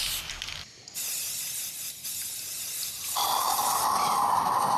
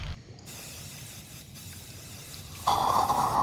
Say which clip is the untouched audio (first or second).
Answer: first